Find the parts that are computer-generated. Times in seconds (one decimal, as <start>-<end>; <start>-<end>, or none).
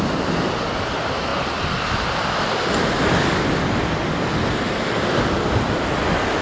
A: none